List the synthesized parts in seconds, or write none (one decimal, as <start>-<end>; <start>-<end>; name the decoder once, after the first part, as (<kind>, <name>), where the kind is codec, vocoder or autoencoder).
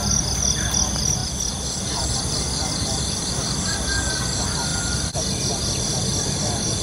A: 1.2-3.3 (vocoder, BigVGAN v2); 4.7-5.2